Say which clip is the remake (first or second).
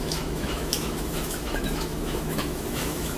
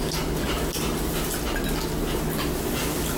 first